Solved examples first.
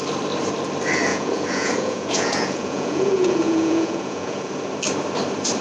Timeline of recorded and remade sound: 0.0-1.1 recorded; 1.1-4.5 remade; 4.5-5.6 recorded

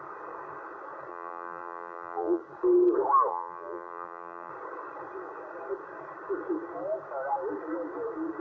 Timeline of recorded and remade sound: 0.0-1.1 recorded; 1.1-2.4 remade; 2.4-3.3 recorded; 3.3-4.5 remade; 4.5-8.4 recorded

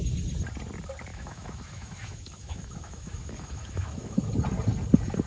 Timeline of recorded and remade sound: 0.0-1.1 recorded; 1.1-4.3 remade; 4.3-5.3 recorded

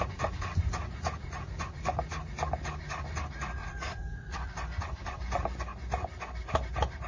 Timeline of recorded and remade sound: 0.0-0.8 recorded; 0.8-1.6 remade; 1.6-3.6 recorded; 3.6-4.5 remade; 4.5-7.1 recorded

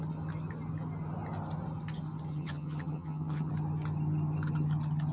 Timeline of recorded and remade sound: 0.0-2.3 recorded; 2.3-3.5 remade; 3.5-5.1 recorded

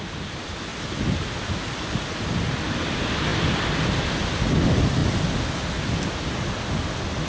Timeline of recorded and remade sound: 0.0-7.3 recorded